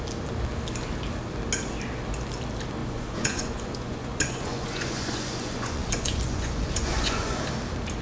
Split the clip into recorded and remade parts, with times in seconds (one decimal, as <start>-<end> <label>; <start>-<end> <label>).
0.0-2.8 recorded; 2.8-7.4 remade; 7.4-8.0 recorded